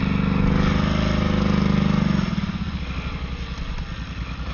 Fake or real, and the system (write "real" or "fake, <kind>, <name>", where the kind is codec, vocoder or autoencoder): real